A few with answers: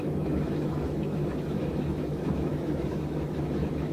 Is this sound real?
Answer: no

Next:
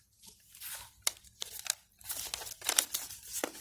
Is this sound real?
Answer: yes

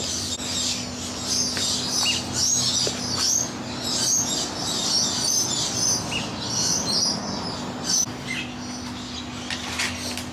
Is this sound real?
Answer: yes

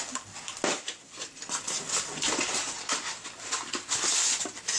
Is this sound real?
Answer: yes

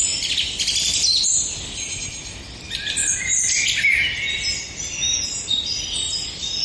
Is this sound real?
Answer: yes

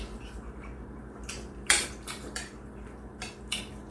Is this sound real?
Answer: no